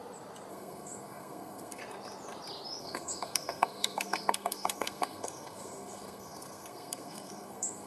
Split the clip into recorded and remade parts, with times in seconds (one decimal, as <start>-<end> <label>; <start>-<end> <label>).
0.0-0.5 recorded; 0.5-1.8 remade; 1.8-2.8 recorded; 2.8-7.9 remade